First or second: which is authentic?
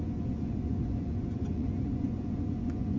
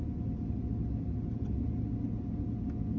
second